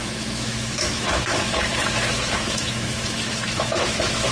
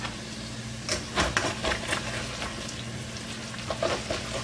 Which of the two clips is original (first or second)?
second